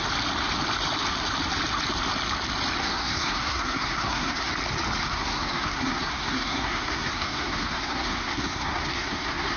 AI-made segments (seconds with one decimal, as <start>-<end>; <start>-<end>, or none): 2.8-4.5; 5.0-9.6